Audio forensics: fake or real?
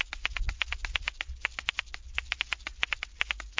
real